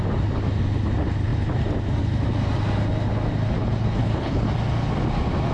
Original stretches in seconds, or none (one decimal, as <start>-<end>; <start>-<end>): 0.0-3.8; 4.5-5.5